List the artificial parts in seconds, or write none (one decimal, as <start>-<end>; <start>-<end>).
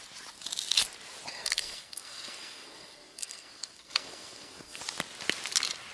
1.3-4.8